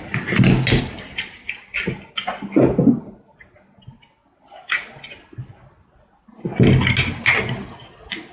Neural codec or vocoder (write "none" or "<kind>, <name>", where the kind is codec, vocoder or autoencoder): none